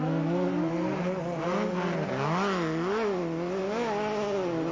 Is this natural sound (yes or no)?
yes